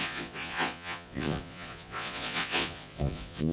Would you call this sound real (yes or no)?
no